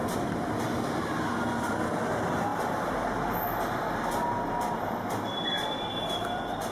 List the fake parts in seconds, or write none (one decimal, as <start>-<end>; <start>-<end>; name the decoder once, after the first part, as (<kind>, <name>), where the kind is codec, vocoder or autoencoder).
none